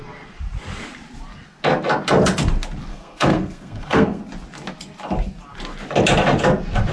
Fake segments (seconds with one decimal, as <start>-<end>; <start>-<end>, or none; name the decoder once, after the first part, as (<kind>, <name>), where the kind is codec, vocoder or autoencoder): 2.9-4.2 (codec, SNAC)